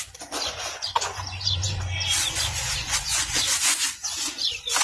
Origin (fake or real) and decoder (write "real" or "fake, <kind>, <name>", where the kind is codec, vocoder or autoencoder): fake, vocoder, Vocos